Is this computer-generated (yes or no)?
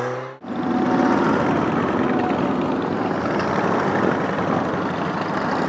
no